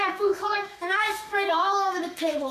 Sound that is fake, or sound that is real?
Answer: fake